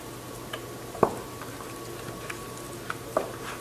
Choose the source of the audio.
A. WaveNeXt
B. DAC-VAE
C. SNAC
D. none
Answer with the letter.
D